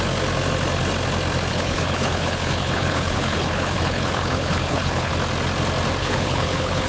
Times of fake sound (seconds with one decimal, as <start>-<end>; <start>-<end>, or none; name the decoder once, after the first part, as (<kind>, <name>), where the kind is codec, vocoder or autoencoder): 1.5-5.1 (codec, HILCodec); 6.0-6.9